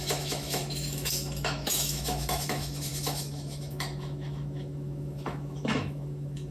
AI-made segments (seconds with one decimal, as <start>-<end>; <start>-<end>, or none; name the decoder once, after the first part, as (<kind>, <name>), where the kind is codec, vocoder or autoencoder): 0.0-6.5 (autoencoder, DAC-VAE)